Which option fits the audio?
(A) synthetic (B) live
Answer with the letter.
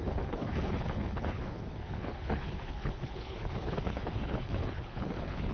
A